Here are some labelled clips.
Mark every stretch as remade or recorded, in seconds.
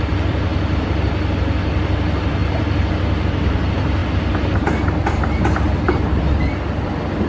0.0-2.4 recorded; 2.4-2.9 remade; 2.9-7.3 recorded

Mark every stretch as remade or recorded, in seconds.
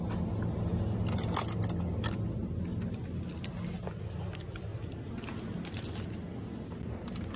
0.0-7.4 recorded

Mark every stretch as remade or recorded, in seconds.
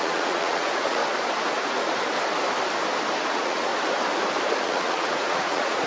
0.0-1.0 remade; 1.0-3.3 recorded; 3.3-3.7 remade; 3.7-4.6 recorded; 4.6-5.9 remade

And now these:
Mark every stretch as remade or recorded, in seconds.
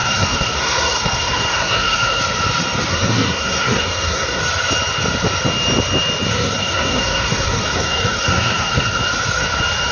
0.0-2.2 remade; 2.2-2.9 recorded; 2.9-4.4 remade; 4.4-6.3 recorded; 6.3-9.0 remade; 9.0-9.9 recorded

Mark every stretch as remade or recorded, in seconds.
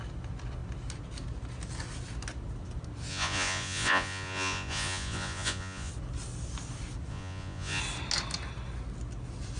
0.0-3.1 recorded; 3.1-5.9 remade; 5.9-7.1 recorded; 7.1-7.8 remade; 7.8-9.6 recorded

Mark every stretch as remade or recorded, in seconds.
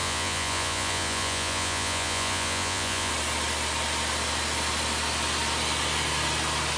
0.0-3.1 remade; 3.1-6.8 recorded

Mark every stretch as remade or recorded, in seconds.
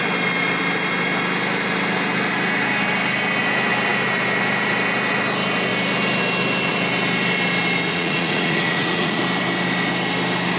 0.0-7.9 recorded; 7.9-9.2 remade; 9.2-10.6 recorded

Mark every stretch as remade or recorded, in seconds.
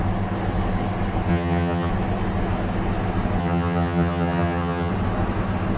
0.0-1.3 recorded; 1.3-1.9 remade; 1.9-3.4 recorded; 3.4-4.9 remade; 4.9-5.8 recorded